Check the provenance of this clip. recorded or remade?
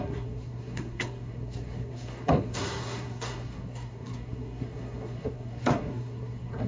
remade